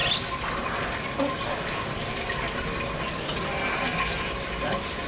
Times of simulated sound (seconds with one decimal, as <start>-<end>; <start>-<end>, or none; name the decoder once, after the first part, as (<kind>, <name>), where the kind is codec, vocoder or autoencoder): none